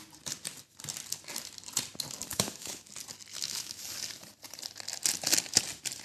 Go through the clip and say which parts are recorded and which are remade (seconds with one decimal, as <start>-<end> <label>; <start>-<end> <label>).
0.0-2.3 recorded; 2.3-2.9 remade; 2.9-3.3 recorded; 3.3-3.8 remade; 3.8-6.0 recorded